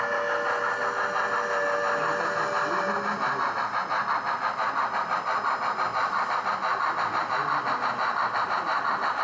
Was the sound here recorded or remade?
recorded